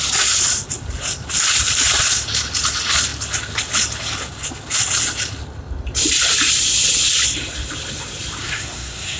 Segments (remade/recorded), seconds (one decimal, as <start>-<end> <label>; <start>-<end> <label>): 0.0-8.4 recorded; 8.4-9.2 remade